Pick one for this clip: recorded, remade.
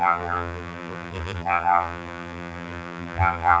remade